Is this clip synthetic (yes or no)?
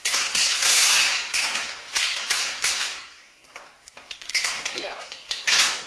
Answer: yes